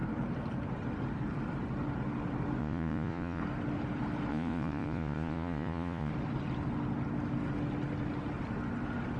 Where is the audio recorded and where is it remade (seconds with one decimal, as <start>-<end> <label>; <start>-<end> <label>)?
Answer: 0.0-2.6 recorded; 2.6-3.4 remade; 3.4-4.3 recorded; 4.3-6.1 remade; 6.1-9.2 recorded